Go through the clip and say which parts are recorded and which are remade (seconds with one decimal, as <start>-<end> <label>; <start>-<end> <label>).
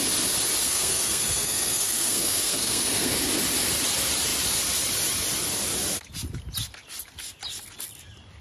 0.0-0.6 recorded; 0.6-3.1 remade; 3.1-8.4 recorded